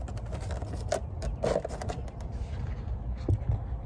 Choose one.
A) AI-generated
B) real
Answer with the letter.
B